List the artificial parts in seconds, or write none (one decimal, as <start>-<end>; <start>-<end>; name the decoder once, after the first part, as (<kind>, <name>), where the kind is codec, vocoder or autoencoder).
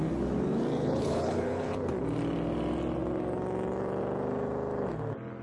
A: 0.8-1.7 (codec, HILCodec)